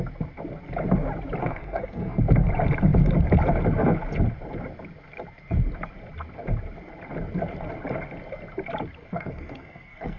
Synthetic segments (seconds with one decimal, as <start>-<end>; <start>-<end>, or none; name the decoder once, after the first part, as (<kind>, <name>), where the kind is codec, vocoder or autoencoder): 1.4-2.2 (codec, SNAC); 9.0-10.2

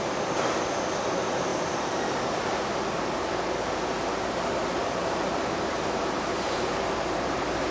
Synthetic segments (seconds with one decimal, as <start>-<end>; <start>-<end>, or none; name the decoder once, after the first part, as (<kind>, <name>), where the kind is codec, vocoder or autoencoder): 0.0-1.5 (vocoder, BigVGAN v2); 5.0-7.7

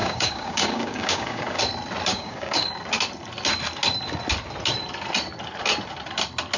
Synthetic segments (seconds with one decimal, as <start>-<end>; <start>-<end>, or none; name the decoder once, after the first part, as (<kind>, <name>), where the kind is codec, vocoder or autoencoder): 0.0-1.6 (codec, DAC); 2.1-2.7